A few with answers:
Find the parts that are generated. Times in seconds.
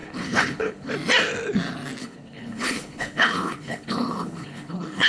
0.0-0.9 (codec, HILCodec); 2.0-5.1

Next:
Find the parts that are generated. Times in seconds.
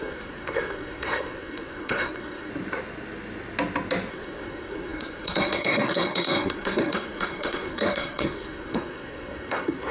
0.0-2.5 (codec, SNAC); 4.1-9.9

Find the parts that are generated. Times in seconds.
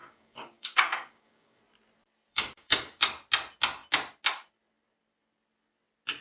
0.0-1.6 (codec, DAC); 2.3-3.0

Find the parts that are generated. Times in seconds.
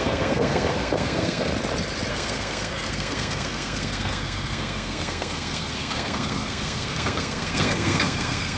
0.0-1.5 (codec, SNAC); 2.1-8.6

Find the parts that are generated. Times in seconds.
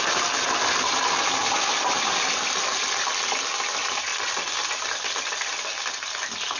none